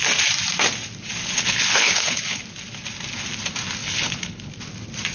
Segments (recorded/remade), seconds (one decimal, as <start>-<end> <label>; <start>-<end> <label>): 0.0-1.2 recorded; 1.2-2.4 remade; 2.4-3.8 recorded; 3.8-4.5 remade; 4.5-5.1 recorded